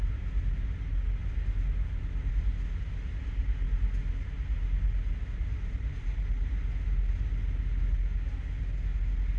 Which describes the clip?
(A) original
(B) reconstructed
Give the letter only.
A